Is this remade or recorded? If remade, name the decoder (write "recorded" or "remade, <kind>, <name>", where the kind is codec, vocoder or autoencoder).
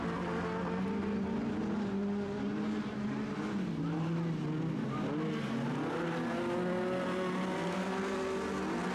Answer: recorded